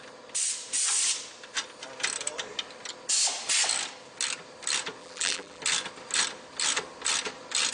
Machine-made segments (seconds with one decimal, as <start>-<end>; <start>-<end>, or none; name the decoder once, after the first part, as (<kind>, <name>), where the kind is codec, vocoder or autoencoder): 5.0-5.6 (vocoder, BigVGAN v2)